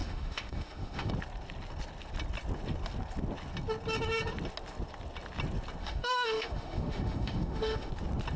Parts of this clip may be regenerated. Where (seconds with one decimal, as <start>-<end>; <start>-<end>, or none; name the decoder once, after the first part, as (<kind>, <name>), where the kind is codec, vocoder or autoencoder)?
0.0-1.1 (autoencoder, DAC-VAE); 5.8-7.9